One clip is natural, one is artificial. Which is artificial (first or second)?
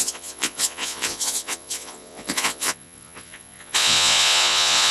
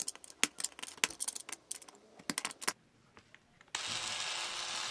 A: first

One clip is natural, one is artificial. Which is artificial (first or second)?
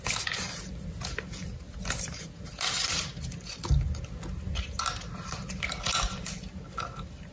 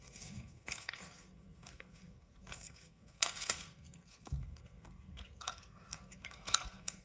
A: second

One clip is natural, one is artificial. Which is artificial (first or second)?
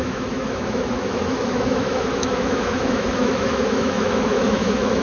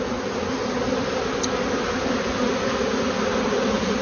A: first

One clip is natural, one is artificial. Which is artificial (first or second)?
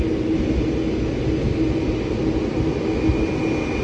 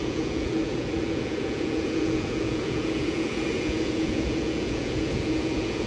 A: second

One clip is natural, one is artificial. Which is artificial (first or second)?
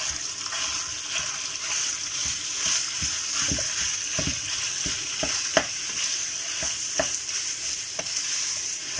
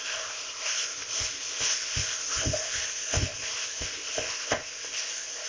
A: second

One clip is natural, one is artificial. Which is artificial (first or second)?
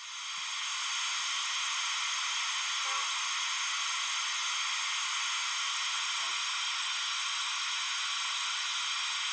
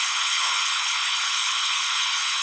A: second